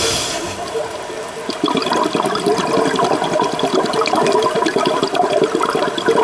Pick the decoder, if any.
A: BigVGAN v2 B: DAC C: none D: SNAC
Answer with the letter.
C